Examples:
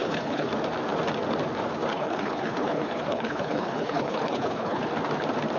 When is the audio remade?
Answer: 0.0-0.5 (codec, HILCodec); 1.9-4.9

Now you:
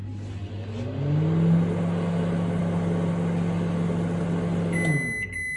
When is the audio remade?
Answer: none

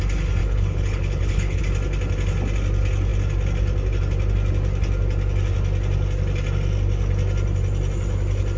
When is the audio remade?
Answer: 0.4-1.6 (codec, HILCodec)